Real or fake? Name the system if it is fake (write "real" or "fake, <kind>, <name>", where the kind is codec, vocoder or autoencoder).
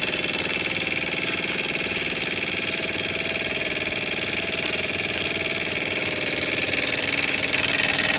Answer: fake, vocoder, BigVGAN v2